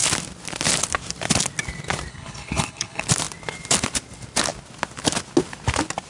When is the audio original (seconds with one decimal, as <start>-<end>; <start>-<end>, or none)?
0.0-2.1; 3.0-6.1